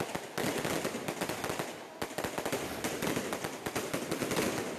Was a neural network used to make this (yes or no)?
no